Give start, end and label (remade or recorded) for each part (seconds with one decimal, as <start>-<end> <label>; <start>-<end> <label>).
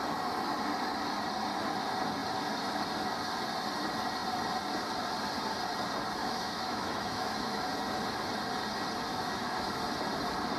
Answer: 0.0-6.2 recorded; 6.2-7.7 remade; 7.7-9.1 recorded; 9.1-9.8 remade; 9.8-10.6 recorded